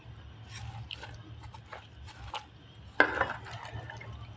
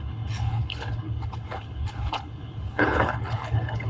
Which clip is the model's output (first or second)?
second